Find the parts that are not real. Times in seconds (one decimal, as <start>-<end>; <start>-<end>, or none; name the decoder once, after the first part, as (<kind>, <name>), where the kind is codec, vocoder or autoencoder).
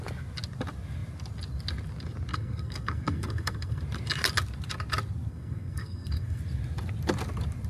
2.3-3.8 (codec, SNAC); 5.3-6.4